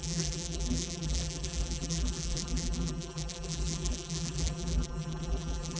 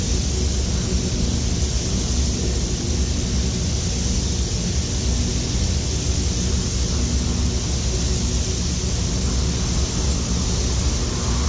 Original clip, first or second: second